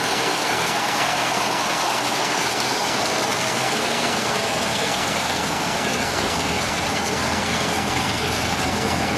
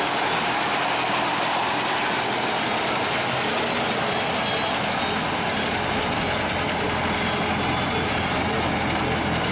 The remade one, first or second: first